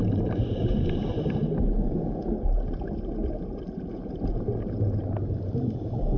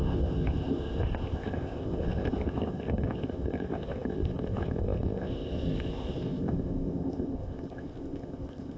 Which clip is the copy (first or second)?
second